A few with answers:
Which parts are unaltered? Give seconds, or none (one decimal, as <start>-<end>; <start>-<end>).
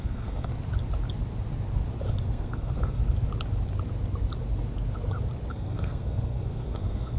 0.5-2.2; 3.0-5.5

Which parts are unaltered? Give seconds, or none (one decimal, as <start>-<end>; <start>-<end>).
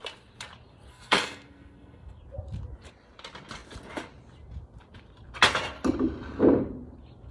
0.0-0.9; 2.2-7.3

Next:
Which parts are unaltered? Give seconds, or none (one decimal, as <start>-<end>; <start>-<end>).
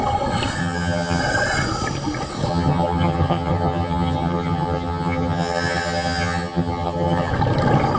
0.0-0.6; 1.2-2.5; 7.3-8.0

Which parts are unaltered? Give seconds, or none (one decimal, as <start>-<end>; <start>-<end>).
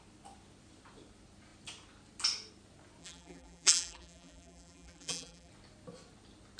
0.0-3.0; 5.5-6.6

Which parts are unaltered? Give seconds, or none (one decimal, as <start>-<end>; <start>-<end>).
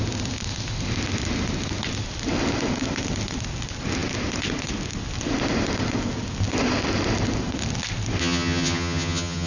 0.0-8.2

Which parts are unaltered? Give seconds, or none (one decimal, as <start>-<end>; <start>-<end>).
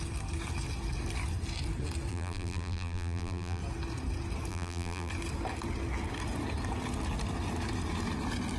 0.0-2.1; 3.6-4.5; 5.1-8.6